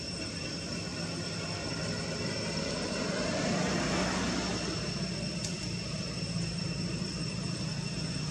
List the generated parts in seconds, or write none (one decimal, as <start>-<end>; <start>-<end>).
0.0-3.6; 5.9-8.3